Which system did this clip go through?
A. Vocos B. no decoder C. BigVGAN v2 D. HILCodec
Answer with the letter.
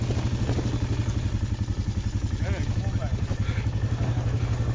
B